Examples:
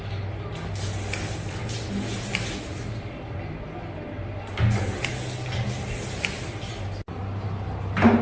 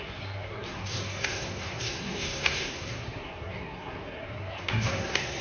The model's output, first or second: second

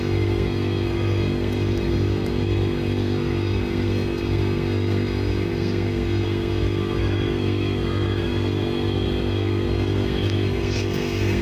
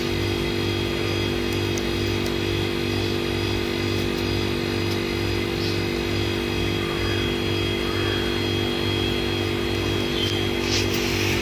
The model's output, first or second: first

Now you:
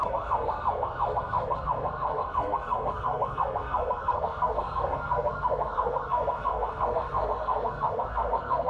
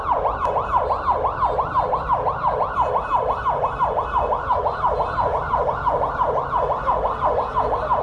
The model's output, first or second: first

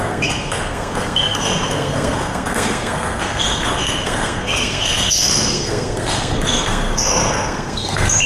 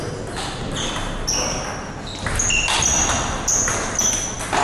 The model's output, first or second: first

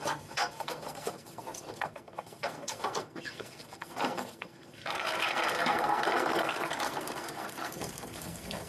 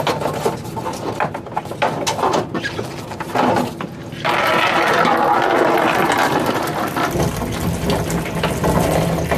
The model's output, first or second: first